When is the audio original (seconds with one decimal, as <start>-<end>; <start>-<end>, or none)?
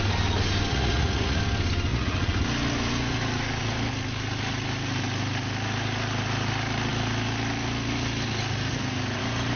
0.0-0.7; 1.4-1.9; 2.4-9.6